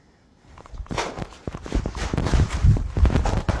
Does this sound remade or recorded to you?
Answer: remade